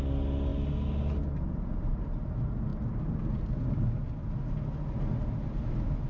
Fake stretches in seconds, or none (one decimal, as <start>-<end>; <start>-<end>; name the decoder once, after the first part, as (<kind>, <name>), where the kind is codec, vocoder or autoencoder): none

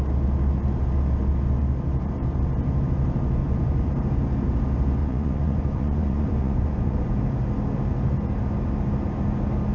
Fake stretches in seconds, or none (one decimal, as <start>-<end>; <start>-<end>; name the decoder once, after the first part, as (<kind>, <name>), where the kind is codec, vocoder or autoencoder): 3.4-3.9 (vocoder, Vocos); 5.0-7.1

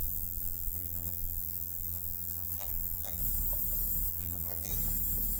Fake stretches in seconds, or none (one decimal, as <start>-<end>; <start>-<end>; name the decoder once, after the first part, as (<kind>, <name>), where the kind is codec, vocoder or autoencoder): 0.0-3.2 (vocoder, BigVGAN v2); 4.1-4.7

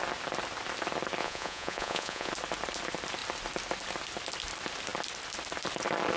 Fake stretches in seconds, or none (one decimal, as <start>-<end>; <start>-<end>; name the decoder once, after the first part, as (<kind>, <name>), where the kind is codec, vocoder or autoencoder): 1.2-2.3 (vocoder, Vocos)